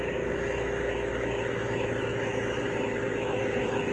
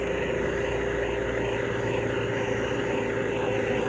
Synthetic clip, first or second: first